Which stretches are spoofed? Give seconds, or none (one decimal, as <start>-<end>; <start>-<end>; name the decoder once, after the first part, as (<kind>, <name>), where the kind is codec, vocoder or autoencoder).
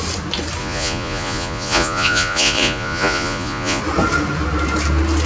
0.6-3.8 (vocoder, Vocos)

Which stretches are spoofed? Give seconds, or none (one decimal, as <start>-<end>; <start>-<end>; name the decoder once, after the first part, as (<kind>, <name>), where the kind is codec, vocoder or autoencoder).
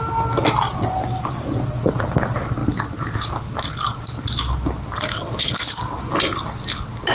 none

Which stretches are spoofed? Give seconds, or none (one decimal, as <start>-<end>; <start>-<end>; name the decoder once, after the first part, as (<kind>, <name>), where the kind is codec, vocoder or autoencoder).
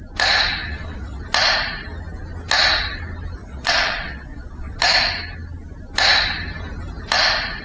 0.6-1.2 (vocoder, WaveNeXt); 3.4-4.8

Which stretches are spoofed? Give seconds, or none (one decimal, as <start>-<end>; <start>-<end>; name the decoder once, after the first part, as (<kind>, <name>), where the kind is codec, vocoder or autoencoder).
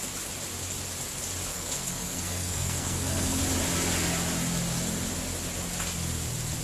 1.5-3.4 (codec, SNAC)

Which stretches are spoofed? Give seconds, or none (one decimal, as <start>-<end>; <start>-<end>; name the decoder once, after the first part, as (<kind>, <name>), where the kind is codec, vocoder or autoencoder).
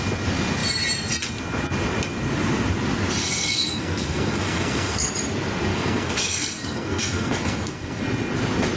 3.2-5.1 (codec, SNAC); 5.7-8.0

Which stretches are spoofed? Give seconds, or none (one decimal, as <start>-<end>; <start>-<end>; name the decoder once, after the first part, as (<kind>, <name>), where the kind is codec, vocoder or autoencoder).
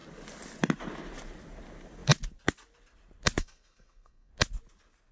3.4-4.3 (codec, SNAC)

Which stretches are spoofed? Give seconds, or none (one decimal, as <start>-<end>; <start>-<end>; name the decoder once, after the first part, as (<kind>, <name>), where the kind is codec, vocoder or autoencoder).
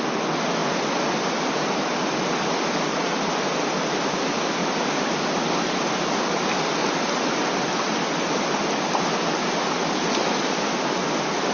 none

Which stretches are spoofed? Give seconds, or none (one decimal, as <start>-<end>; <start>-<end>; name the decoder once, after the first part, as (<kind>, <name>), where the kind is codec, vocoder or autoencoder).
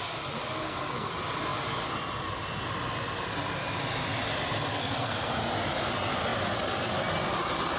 0.6-1.1 (codec, SNAC); 4.7-5.3